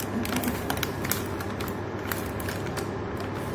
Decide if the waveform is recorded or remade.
recorded